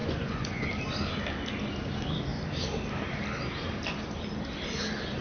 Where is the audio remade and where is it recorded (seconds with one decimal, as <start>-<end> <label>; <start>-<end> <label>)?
0.0-0.7 remade; 0.7-5.2 recorded